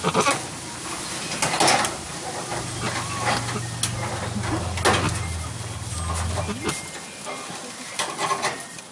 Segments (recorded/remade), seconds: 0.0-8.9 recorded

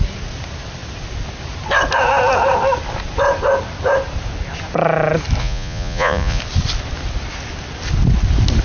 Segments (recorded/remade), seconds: 0.0-5.4 recorded; 5.4-6.4 remade; 6.4-8.6 recorded

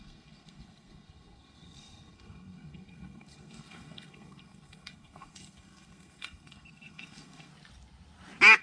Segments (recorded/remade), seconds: 0.0-7.5 remade; 7.5-8.6 recorded

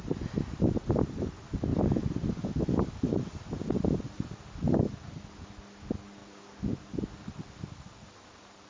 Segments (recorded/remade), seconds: 0.0-8.7 recorded

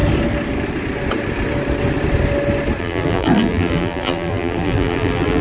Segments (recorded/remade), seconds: 0.0-2.8 recorded; 2.8-5.4 remade

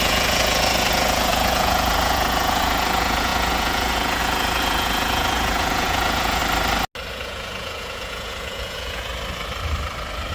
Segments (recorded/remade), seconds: 0.0-6.4 remade; 6.4-7.1 recorded; 7.1-9.1 remade; 9.1-10.3 recorded

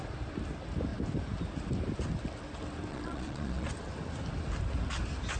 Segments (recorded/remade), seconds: 0.0-2.9 recorded; 2.9-3.7 remade; 3.7-5.4 recorded

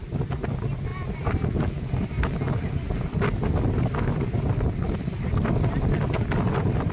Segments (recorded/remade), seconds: 0.0-6.9 recorded